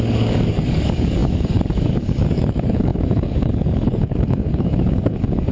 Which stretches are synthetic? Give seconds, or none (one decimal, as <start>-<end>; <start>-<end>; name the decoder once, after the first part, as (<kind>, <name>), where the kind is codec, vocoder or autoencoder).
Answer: 0.0-5.5 (codec, DAC)